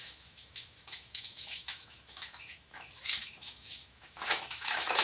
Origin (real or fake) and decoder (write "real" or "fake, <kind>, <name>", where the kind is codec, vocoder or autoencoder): fake, autoencoder, DAC-VAE